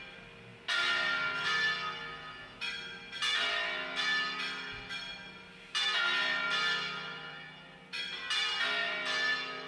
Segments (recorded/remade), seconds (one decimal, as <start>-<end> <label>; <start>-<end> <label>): 0.0-9.7 recorded